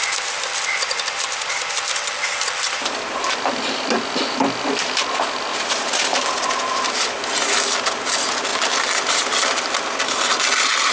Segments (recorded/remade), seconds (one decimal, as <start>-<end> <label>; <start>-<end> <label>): 0.0-5.5 recorded; 5.5-6.3 remade; 6.3-10.9 recorded

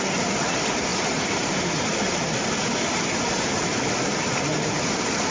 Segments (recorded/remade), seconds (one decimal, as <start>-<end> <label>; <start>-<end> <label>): 0.0-5.3 recorded

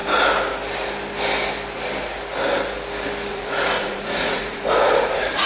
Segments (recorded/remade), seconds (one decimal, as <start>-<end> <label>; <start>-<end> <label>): 0.0-3.3 recorded; 3.3-5.5 remade

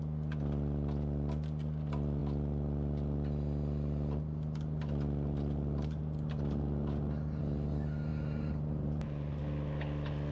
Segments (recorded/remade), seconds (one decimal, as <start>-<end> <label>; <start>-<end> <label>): 0.0-8.1 recorded; 8.1-9.4 remade; 9.4-10.3 recorded

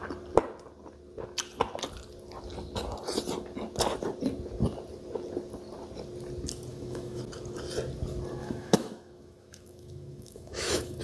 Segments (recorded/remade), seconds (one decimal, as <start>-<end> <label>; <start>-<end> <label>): 0.0-6.7 recorded; 6.7-7.2 remade; 7.2-8.4 recorded; 8.4-11.0 remade

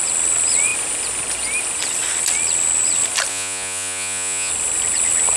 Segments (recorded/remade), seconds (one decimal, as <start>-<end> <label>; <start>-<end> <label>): 0.0-3.3 recorded; 3.3-4.5 remade; 4.5-5.4 recorded

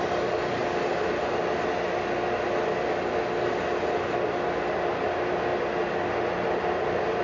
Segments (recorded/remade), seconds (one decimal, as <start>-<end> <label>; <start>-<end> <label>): 0.0-7.2 recorded

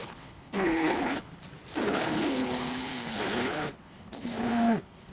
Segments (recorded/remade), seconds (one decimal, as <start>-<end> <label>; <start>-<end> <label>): 0.0-1.4 remade; 1.4-1.8 recorded; 1.8-5.1 remade